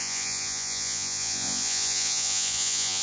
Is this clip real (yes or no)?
no